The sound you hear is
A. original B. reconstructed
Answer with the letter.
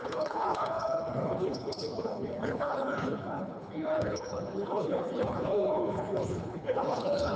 B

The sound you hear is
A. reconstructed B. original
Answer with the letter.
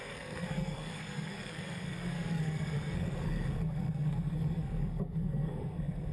A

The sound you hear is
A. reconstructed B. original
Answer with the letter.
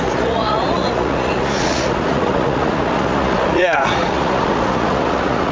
A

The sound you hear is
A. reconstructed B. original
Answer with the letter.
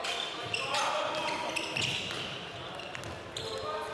B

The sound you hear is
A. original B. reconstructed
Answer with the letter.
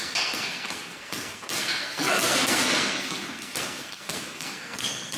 B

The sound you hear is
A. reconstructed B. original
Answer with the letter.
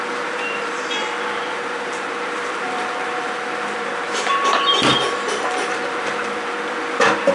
A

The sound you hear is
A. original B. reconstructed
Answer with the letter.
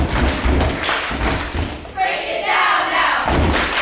A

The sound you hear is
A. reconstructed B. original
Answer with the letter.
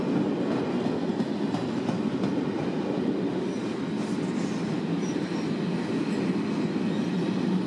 B